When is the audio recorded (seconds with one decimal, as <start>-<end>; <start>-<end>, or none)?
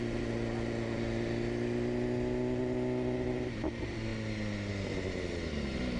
0.0-6.0